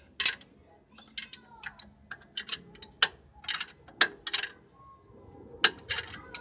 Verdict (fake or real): real